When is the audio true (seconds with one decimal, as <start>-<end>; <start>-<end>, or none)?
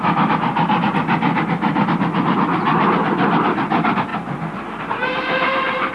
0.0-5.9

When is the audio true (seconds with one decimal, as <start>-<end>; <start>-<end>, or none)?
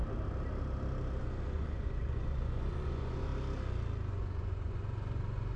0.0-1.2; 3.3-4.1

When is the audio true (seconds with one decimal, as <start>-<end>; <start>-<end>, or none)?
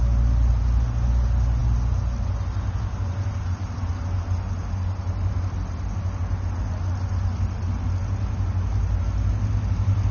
0.0-10.1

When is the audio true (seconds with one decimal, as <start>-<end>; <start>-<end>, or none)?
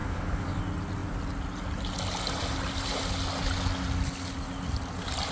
0.6-5.3